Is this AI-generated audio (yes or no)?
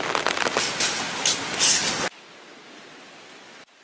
no